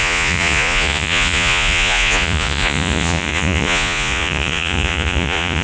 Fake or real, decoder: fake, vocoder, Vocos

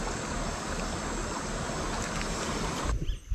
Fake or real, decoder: real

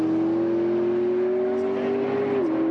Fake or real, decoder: real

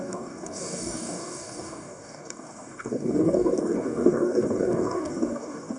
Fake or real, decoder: fake, codec, DAC